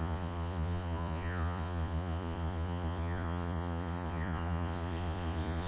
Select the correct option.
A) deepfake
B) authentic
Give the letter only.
A